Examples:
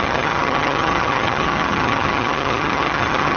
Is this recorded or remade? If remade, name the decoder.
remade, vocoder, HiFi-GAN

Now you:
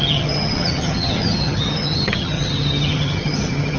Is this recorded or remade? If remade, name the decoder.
remade, vocoder, HiFi-GAN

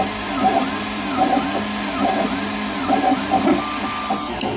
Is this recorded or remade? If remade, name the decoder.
recorded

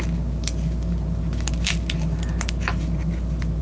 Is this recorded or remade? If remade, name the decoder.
recorded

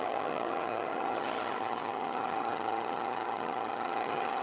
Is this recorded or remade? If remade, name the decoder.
remade, vocoder, HiFi-GAN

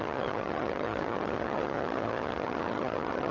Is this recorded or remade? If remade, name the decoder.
remade, vocoder, HiFi-GAN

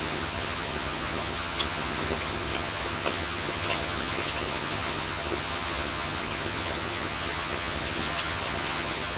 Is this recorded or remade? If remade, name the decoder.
remade, vocoder, HiFi-GAN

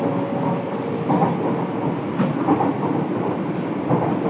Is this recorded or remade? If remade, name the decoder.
recorded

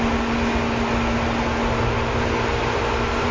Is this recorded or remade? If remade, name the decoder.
recorded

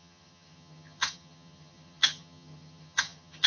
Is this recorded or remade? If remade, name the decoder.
remade, vocoder, HiFi-GAN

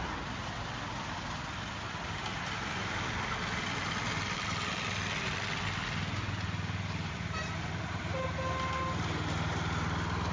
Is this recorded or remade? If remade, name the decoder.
recorded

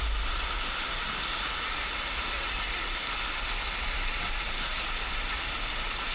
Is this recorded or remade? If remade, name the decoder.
recorded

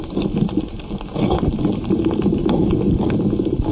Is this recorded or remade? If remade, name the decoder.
recorded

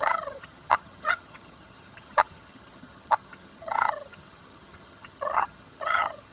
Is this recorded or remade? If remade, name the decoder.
remade, vocoder, HiFi-GAN